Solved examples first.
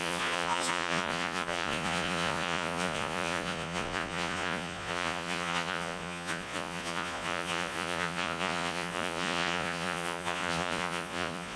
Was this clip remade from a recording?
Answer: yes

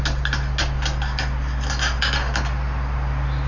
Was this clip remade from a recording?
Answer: no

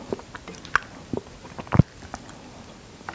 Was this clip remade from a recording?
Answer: no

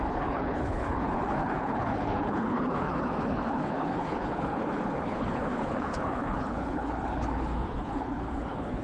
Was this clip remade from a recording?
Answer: yes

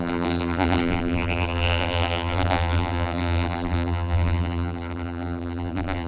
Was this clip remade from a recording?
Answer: yes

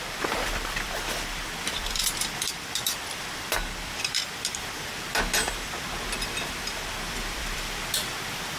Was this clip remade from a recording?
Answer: yes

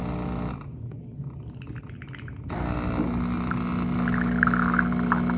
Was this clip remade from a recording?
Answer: no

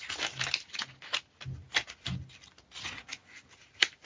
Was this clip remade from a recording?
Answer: no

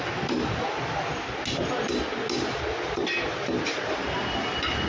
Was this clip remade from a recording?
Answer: no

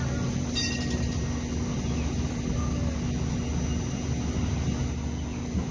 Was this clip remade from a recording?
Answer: no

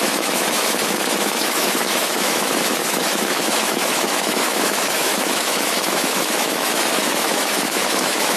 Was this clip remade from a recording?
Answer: yes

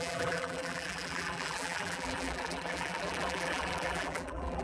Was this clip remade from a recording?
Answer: yes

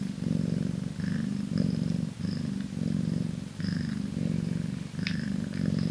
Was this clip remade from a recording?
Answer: no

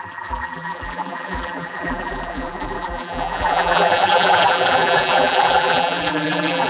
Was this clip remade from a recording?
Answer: yes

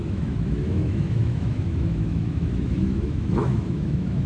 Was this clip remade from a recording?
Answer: yes